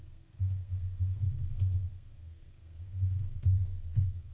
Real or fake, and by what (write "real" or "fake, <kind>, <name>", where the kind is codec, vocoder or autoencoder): fake, codec, SNAC